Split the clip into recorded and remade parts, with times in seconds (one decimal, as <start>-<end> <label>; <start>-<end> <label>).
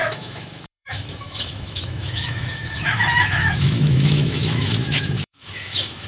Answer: 0.0-6.1 remade